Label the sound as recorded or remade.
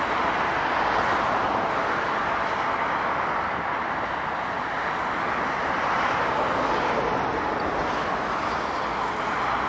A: recorded